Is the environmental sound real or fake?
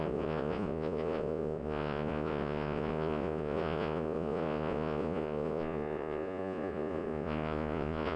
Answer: fake